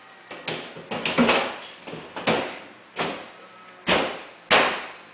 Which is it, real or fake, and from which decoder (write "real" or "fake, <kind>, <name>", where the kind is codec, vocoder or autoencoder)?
real